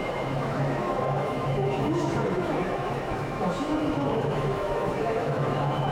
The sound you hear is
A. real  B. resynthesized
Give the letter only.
B